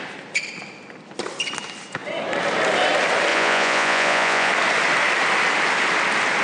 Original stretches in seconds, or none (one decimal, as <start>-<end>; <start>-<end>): 0.0-3.3; 4.5-6.4